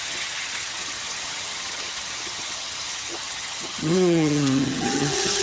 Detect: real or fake fake